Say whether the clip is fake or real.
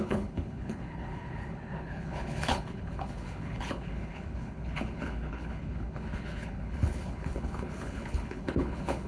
fake